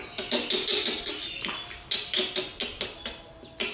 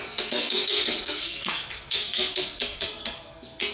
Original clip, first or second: first